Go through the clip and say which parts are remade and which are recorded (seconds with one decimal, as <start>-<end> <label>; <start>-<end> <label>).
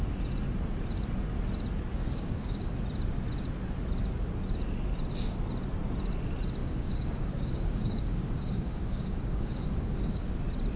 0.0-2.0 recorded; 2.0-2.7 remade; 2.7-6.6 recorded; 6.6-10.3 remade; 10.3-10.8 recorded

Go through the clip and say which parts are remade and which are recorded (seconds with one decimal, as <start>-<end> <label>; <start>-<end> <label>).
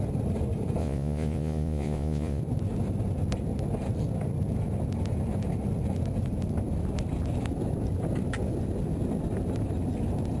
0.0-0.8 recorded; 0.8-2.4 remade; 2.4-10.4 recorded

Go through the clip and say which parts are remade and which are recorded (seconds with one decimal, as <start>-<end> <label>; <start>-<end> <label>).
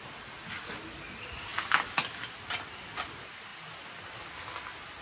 0.0-5.0 recorded